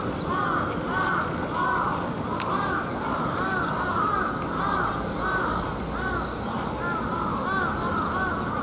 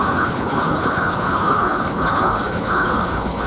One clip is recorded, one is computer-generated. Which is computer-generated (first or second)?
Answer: second